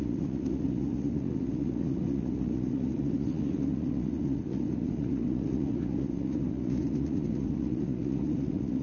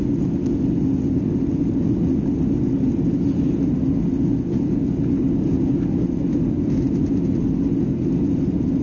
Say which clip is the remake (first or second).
first